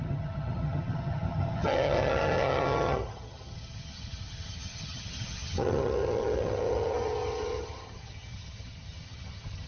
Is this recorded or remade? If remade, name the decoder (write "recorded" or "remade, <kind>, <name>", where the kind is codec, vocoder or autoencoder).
remade, vocoder, HiFi-GAN